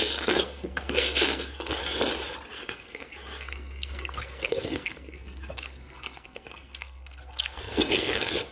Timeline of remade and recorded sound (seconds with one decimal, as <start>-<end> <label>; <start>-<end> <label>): 0.0-1.8 remade; 1.8-2.5 recorded; 2.5-8.5 remade